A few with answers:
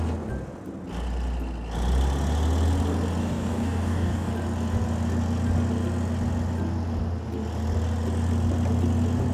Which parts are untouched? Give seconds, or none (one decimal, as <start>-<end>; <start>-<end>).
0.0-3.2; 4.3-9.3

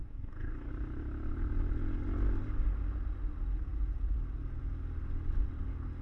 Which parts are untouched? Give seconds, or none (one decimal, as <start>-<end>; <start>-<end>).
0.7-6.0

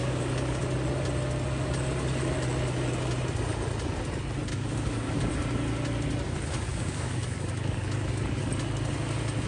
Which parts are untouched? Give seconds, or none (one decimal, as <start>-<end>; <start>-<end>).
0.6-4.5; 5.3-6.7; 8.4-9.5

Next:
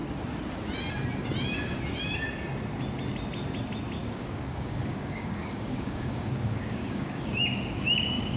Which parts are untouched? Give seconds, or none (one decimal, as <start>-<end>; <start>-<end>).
0.0-4.0

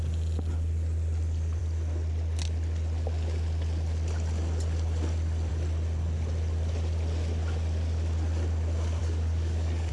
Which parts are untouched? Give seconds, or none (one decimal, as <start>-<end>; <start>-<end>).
0.0-9.0

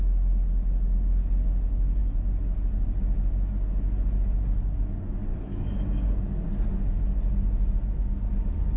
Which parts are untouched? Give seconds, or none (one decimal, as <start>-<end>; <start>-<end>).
0.0-5.3; 6.3-8.8

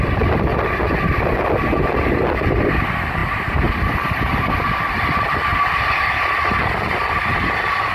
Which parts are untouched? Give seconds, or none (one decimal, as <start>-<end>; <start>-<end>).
0.0-7.9